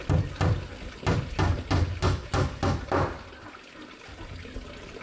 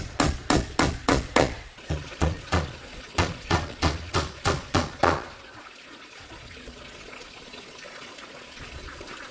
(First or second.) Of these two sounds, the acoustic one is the first